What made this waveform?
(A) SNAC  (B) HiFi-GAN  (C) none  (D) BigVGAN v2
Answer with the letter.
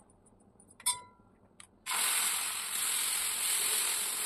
D